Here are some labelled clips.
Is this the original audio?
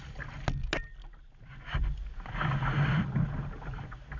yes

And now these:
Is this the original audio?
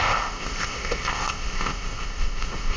no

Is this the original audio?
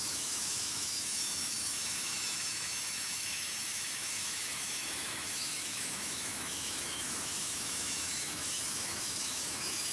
no